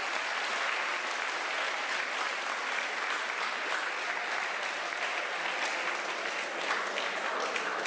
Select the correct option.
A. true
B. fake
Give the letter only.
A